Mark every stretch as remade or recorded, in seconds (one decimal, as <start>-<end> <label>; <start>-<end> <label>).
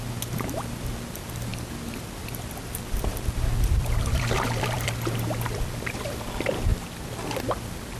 0.0-1.5 remade; 1.5-2.2 recorded; 2.2-6.7 remade; 6.7-7.4 recorded; 7.4-8.0 remade